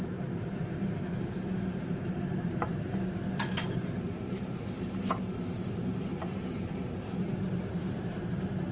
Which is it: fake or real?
fake